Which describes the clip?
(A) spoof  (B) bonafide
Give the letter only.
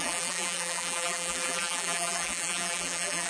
A